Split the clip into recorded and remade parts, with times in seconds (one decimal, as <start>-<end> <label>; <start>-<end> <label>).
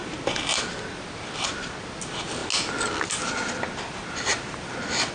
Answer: 0.0-5.1 recorded